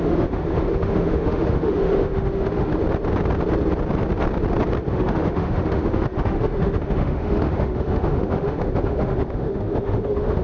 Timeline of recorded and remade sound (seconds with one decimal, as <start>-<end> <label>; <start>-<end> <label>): 0.0-2.7 remade; 2.7-4.9 recorded; 4.9-10.4 remade